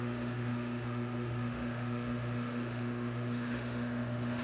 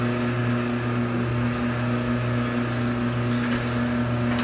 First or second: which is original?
second